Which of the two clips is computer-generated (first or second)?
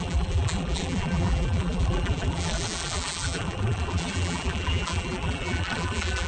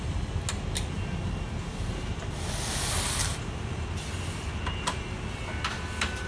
first